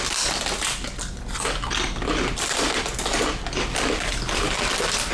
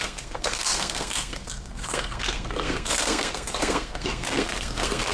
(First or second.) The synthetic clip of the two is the second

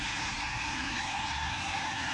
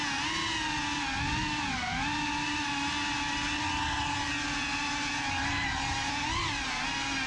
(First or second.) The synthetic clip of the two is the first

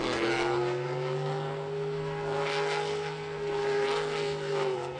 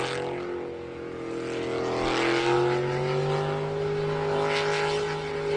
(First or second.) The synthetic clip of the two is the first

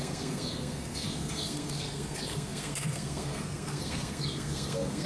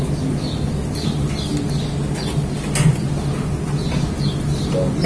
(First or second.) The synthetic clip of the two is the first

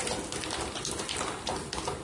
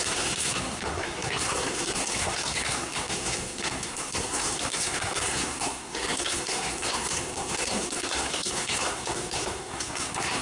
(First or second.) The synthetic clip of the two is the second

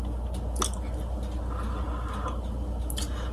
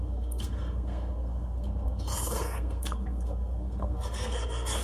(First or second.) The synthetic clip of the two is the second